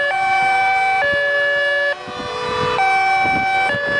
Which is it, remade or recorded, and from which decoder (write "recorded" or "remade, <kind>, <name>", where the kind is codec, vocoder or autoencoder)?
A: recorded